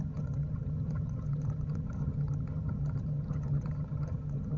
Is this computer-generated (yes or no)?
yes